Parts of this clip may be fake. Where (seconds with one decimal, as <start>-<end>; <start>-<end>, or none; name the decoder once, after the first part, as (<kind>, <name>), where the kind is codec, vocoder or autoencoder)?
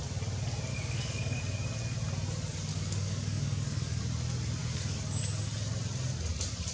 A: 0.7-1.4 (codec, DAC); 2.7-4.0; 4.6-5.2